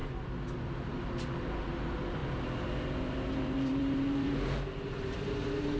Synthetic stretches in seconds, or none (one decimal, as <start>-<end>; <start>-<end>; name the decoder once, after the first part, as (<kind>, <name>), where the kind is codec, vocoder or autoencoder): 0.6-5.8 (vocoder, BigVGAN v2)